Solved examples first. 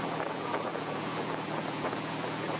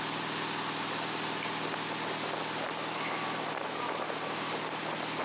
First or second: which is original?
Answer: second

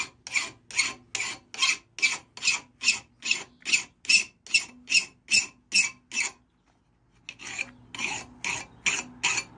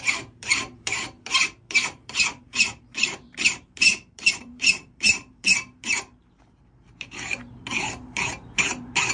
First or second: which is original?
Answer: first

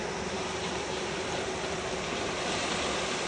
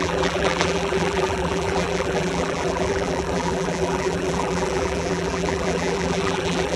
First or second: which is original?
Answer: first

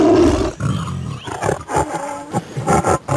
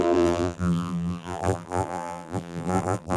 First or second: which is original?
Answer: first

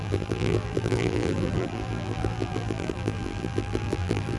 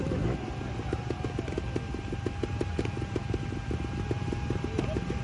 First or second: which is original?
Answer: second